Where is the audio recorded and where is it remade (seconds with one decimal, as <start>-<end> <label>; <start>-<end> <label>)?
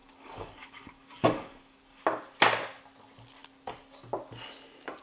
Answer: 0.0-2.0 remade; 2.0-5.0 recorded